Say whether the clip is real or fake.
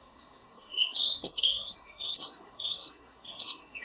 fake